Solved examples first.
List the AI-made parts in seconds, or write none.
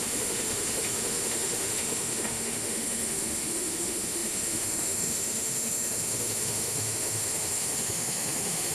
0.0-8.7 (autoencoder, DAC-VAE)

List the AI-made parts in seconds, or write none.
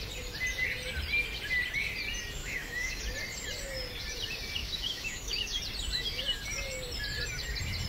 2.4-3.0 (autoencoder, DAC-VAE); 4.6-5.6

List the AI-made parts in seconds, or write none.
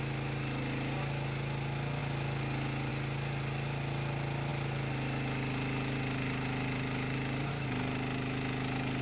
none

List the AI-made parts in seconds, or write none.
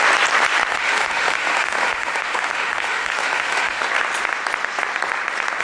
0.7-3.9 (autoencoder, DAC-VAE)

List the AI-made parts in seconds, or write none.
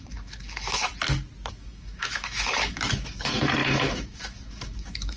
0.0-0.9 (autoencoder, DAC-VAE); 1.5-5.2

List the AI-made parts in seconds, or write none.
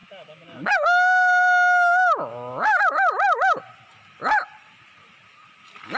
0.0-2.8 (autoencoder, DAC-VAE)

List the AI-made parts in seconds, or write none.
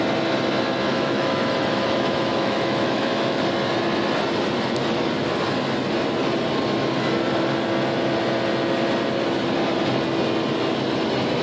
0.9-3.4 (autoencoder, DAC-VAE)